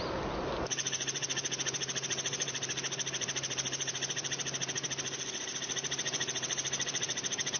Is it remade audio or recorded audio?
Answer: remade